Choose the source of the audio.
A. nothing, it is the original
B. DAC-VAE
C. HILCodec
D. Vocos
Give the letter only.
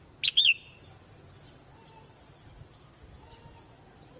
A